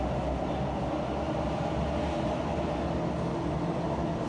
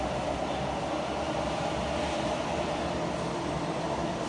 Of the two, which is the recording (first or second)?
first